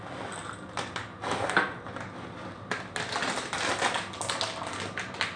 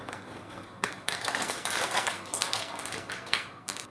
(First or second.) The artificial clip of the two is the second